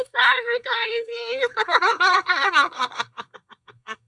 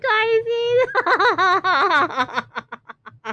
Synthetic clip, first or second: first